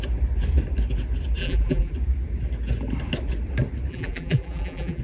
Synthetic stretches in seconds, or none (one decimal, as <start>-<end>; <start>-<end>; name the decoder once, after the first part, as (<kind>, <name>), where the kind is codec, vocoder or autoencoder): 1.4-1.9 (vocoder, BigVGAN v2); 3.9-5.0